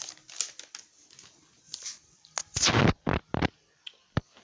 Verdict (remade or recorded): recorded